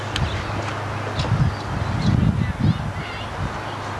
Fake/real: real